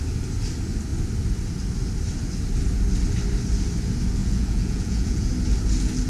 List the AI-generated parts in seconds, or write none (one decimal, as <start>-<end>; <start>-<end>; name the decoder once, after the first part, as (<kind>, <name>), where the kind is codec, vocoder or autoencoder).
4.2-5.3 (vocoder, Vocos)